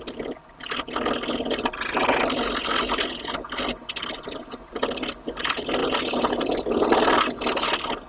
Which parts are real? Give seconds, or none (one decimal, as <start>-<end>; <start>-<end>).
0.0-8.1